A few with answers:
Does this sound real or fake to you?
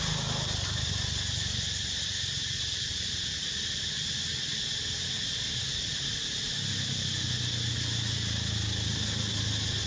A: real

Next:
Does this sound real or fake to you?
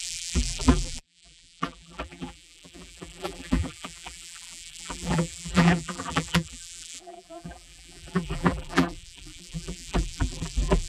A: fake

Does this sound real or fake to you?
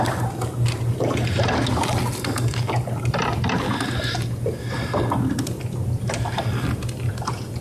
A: real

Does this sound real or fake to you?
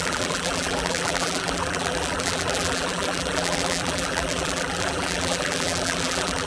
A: fake